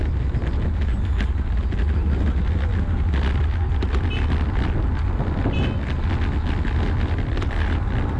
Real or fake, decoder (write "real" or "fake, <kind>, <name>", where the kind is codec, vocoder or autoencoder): real